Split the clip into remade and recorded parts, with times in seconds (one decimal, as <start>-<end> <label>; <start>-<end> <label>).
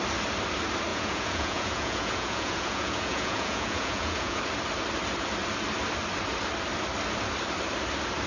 0.0-0.9 recorded; 0.9-4.4 remade; 4.4-8.3 recorded